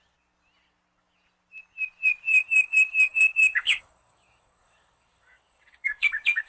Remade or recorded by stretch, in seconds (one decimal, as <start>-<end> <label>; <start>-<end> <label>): 0.0-2.3 recorded; 2.3-6.5 remade